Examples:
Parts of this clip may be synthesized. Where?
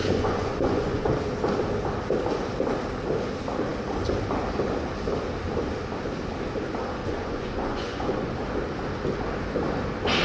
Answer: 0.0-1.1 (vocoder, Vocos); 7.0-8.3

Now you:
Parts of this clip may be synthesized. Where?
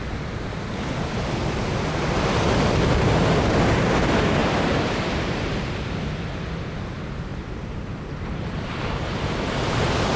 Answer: 4.4-5.5 (vocoder, BigVGAN v2); 7.3-10.2